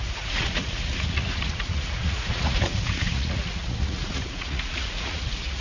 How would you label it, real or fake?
fake